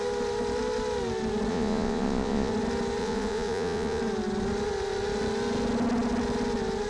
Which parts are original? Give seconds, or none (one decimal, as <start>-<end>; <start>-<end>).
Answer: 0.0-1.5; 2.5-3.0; 4.0-6.9